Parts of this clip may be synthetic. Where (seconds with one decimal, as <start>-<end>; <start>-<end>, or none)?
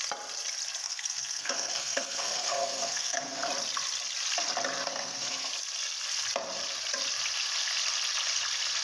0.8-3.5; 4.9-5.5